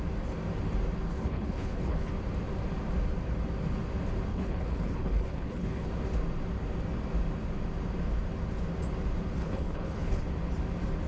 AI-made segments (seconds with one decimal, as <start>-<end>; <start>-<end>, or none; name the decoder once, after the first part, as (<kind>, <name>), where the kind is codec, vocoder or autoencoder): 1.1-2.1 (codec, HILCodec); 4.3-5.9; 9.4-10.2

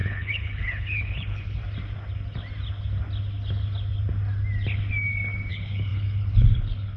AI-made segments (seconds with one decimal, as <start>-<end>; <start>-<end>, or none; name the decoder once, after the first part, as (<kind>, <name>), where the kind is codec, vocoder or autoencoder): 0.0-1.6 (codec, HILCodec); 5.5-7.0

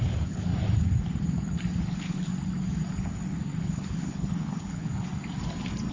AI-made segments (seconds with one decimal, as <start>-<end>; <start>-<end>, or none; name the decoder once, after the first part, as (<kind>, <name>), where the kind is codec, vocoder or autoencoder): 0.0-0.5 (codec, HILCodec); 1.8-2.3; 3.6-5.1

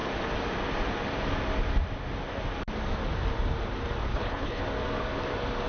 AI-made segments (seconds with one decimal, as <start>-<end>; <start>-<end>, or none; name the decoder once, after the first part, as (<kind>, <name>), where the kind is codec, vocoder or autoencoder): 4.1-4.6 (codec, HILCodec)

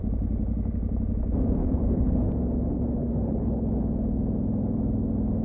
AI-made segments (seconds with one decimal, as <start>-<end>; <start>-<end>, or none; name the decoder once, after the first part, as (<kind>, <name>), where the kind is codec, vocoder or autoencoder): 1.6-2.3 (codec, HILCodec); 3.0-3.8